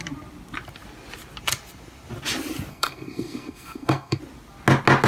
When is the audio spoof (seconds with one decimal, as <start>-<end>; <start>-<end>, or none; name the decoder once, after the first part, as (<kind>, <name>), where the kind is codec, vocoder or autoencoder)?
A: 2.7-4.2 (codec, SNAC)